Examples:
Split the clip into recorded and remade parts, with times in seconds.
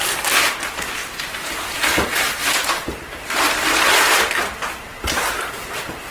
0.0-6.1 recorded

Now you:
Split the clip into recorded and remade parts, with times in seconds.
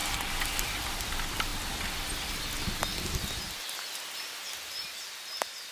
0.0-5.7 recorded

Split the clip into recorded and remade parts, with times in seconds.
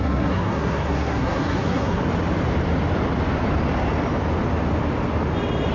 0.0-2.0 remade; 2.0-5.7 recorded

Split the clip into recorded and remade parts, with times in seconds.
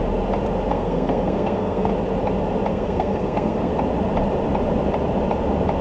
0.0-0.7 recorded; 0.7-1.9 remade; 1.9-2.7 recorded; 2.7-3.7 remade; 3.7-5.8 recorded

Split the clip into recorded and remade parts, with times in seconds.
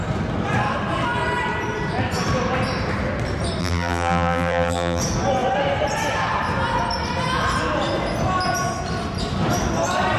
0.0-3.6 recorded; 3.6-5.0 remade; 5.0-10.2 recorded